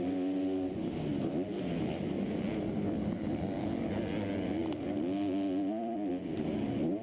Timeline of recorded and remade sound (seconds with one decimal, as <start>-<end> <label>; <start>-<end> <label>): 0.0-7.0 recorded